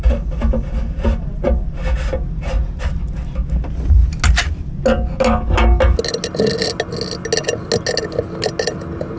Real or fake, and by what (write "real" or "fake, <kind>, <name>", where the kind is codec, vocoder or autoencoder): real